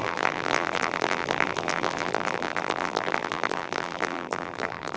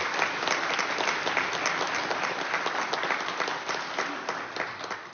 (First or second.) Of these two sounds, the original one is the second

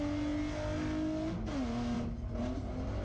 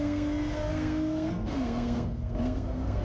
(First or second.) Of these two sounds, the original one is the first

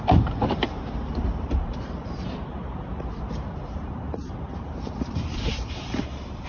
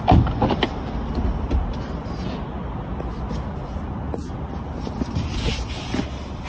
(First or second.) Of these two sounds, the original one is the second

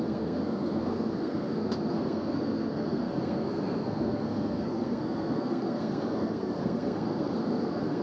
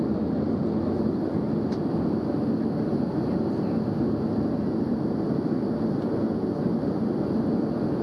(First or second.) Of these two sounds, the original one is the second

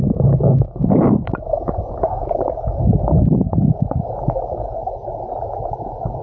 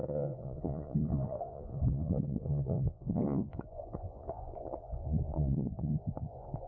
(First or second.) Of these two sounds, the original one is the first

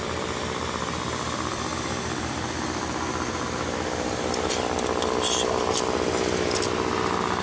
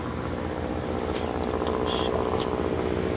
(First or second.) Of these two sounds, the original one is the second